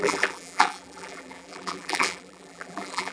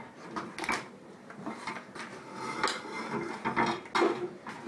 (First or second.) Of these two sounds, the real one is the second